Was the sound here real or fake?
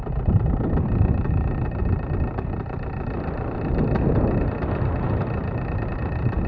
real